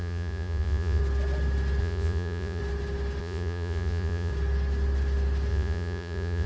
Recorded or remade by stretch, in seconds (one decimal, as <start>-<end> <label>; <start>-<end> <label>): 0.0-1.0 remade; 1.0-1.8 recorded; 1.8-2.6 remade; 2.6-3.2 recorded; 3.2-4.3 remade; 4.3-5.5 recorded; 5.5-6.5 remade